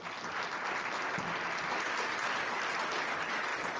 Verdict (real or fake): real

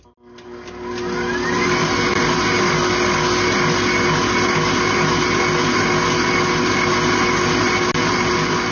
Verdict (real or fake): real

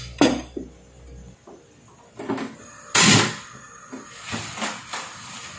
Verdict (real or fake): real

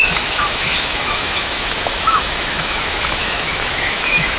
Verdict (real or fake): fake